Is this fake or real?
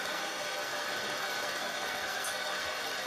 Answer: fake